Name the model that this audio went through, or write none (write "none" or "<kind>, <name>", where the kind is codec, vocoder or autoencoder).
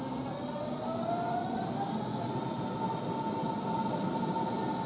none